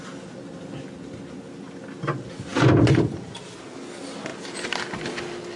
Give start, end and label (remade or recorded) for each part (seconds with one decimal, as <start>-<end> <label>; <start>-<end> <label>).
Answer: 0.0-2.5 recorded; 2.5-3.4 remade; 3.4-5.6 recorded